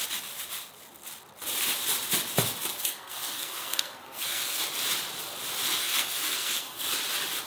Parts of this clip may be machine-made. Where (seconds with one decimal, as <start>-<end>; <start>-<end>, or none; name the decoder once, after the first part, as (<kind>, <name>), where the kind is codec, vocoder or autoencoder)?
2.7-4.6 (codec, SNAC); 5.8-6.9